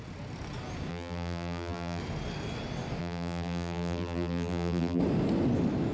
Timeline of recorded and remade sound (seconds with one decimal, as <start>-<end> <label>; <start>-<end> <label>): 0.0-0.9 recorded; 0.9-2.0 remade; 2.0-3.0 recorded; 3.0-5.0 remade; 5.0-5.9 recorded